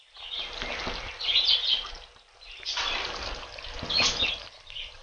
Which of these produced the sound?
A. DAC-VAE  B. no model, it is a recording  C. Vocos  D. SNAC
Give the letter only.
B